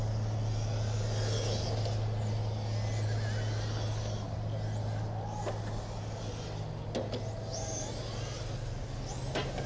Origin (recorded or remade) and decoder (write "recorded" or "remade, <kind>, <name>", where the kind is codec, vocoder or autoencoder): recorded